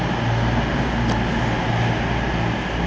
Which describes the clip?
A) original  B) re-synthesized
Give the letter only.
A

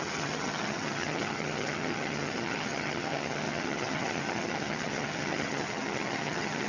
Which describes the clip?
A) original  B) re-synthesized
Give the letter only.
B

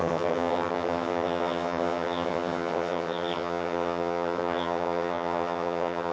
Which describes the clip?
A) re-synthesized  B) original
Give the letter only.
A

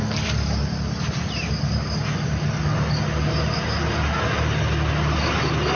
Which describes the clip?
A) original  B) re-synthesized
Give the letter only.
A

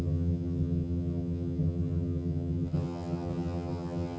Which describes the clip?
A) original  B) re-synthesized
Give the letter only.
B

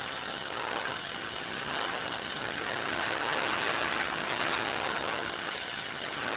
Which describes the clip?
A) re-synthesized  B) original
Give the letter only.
A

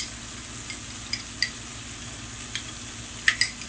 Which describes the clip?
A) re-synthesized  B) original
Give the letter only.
B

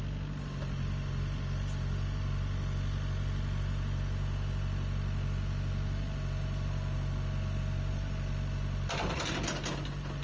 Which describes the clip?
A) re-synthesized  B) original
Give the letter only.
B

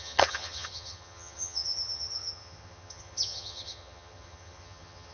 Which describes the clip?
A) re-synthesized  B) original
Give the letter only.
A